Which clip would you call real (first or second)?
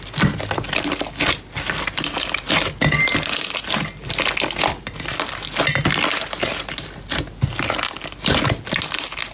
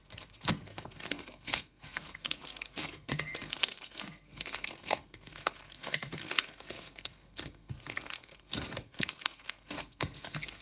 first